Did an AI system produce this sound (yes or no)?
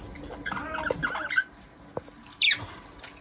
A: no